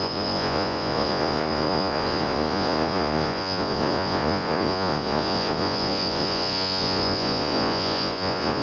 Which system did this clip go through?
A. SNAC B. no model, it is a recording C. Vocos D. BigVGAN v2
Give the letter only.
C